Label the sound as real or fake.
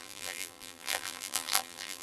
fake